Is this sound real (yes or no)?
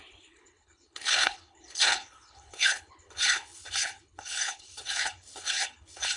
no